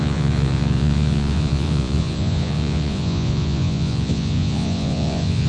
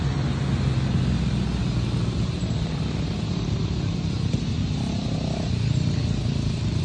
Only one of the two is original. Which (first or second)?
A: second